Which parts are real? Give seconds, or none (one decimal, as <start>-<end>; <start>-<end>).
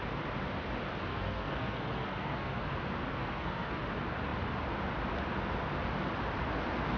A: 0.0-1.1; 2.7-3.1; 3.8-7.0